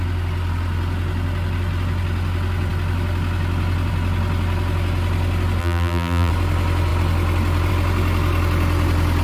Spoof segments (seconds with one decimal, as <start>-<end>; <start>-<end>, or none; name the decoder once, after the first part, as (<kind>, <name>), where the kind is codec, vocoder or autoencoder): 5.6-6.3 (vocoder, BigVGAN v2)